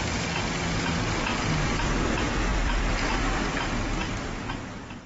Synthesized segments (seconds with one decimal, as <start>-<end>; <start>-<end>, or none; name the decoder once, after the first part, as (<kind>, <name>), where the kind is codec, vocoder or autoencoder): 1.3-1.9 (vocoder, BigVGAN v2); 2.5-4.4